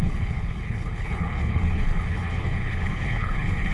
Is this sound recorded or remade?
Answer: remade